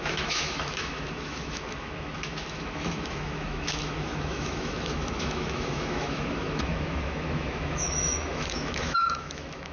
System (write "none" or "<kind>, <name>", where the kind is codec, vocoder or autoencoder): autoencoder, DAC-VAE